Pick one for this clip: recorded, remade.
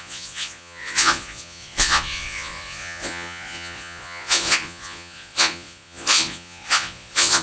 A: remade